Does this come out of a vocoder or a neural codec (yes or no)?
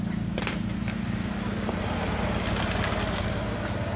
yes